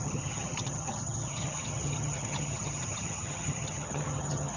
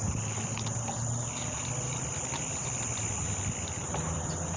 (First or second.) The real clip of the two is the second